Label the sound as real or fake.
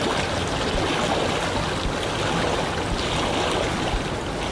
real